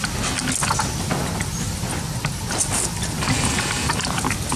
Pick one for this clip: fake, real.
real